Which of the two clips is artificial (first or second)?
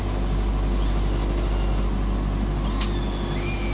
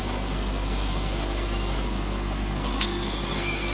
second